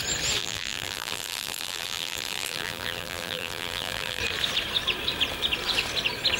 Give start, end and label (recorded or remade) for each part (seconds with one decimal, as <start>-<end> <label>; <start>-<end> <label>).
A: 0.0-0.4 recorded; 0.4-4.2 remade; 4.2-6.4 recorded